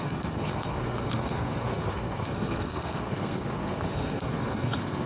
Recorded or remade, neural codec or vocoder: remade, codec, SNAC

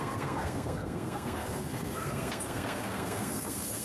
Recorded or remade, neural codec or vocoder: remade, codec, SNAC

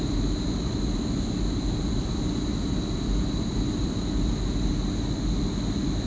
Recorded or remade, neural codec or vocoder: recorded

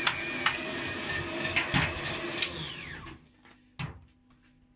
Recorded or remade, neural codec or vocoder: recorded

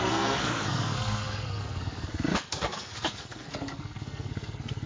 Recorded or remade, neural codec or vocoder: remade, codec, SNAC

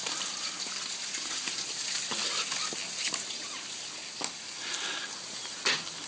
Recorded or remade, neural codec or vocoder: recorded